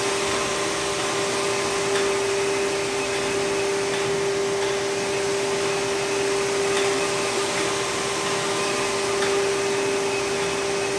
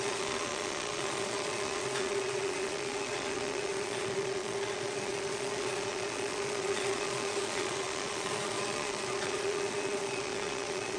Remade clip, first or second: second